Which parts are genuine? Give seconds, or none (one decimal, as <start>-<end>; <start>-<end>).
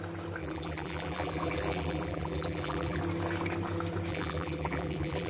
0.0-0.4; 3.0-4.1